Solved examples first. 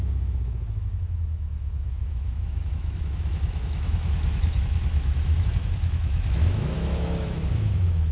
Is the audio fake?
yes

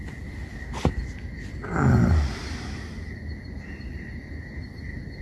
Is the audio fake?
no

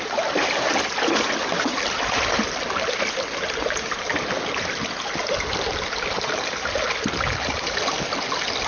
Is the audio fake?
no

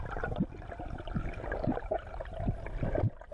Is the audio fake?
no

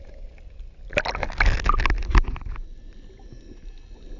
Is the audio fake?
no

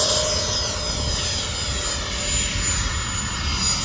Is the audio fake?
no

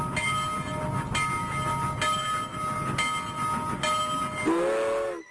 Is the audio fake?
no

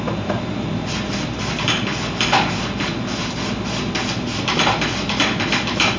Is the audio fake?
no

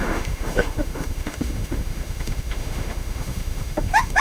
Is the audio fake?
yes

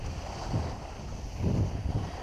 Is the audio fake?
no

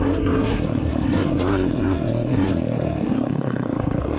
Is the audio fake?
yes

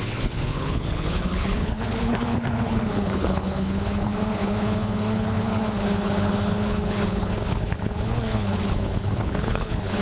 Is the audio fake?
yes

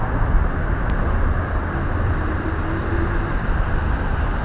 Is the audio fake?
no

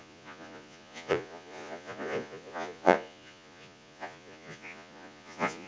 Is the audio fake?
yes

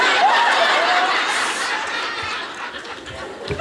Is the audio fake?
no